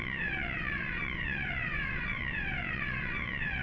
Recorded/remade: remade